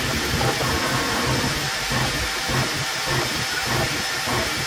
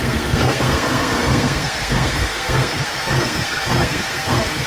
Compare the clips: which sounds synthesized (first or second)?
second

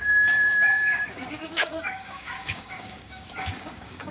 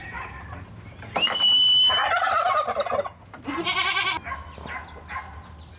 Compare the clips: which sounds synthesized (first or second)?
first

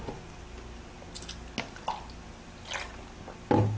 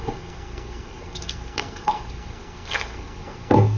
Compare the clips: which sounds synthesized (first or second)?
second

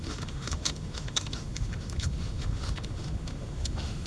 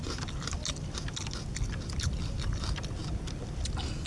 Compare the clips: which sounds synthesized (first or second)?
first